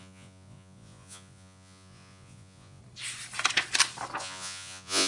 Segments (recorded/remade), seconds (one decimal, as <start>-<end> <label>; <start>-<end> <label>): 0.0-2.8 remade; 2.8-4.2 recorded; 4.2-5.1 remade